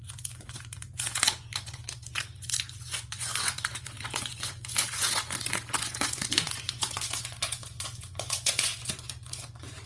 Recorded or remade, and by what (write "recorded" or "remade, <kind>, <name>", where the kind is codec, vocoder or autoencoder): remade, vocoder, Vocos